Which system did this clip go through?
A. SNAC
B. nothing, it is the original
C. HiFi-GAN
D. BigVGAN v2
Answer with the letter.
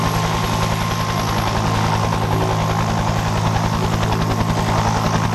B